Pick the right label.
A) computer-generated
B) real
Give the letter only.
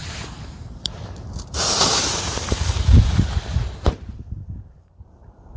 A